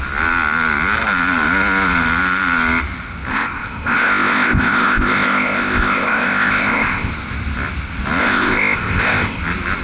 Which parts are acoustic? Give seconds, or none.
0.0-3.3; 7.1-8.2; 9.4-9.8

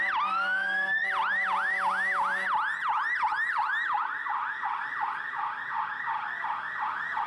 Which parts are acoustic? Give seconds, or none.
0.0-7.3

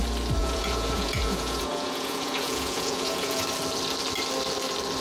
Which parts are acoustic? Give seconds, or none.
0.0-0.4; 3.4-5.0

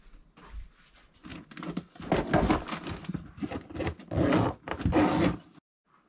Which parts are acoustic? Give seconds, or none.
0.0-6.1